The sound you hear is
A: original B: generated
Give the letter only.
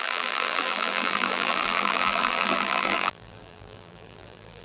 B